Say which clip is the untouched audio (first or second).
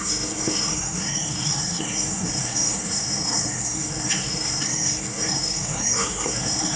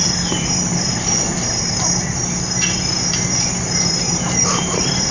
second